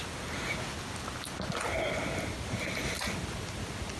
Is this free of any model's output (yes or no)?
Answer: yes